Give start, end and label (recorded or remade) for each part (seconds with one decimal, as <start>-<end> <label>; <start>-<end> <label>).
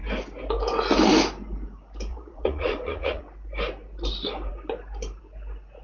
0.0-2.1 recorded; 2.1-3.2 remade; 3.2-5.8 recorded